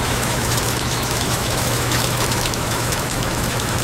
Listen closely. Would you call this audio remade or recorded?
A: remade